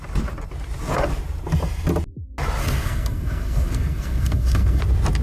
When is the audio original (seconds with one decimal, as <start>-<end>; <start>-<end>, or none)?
0.0-2.6; 4.8-5.2